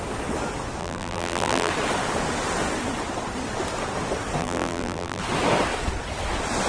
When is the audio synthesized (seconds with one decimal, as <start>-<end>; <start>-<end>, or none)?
0.8-1.7; 4.4-5.2